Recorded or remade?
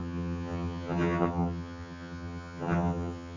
remade